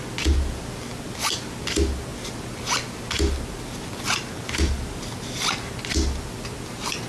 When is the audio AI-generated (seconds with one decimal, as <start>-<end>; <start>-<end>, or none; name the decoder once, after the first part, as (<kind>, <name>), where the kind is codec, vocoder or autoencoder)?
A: none